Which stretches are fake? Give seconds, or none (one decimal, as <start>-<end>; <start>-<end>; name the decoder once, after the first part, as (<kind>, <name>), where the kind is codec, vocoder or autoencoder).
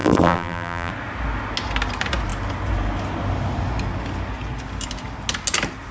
0.0-0.9 (vocoder, BigVGAN v2)